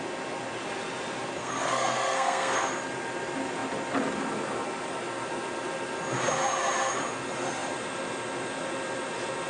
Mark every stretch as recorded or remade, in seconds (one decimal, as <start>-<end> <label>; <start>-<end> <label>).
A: 0.0-1.4 recorded; 1.4-2.7 remade; 2.7-9.5 recorded